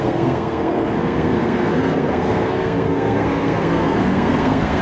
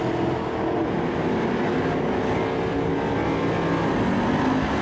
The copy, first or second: first